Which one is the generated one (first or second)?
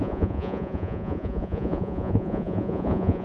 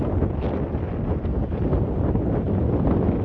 first